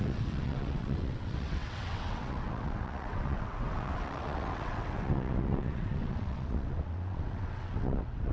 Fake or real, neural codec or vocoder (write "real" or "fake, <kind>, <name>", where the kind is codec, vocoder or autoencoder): fake, vocoder, WaveNeXt